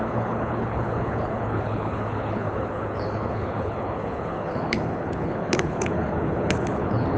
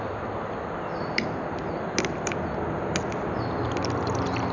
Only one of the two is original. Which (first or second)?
second